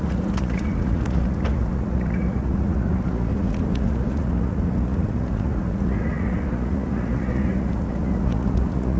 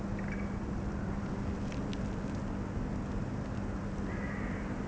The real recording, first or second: second